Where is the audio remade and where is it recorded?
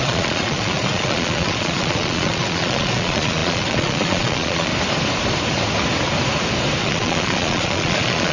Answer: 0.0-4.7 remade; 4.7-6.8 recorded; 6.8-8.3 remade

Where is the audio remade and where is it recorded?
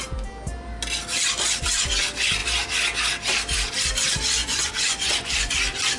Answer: 0.0-4.4 recorded; 4.4-5.5 remade; 5.5-6.0 recorded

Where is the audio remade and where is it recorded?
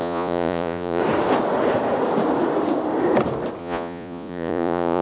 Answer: 0.0-1.0 remade; 1.0-3.6 recorded; 3.6-5.0 remade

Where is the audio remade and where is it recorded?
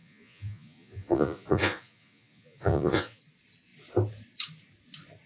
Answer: 0.0-3.2 remade; 3.2-5.3 recorded